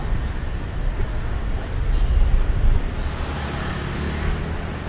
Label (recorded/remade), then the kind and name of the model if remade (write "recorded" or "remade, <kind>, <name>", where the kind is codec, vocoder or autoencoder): recorded